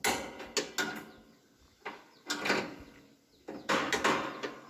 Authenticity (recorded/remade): recorded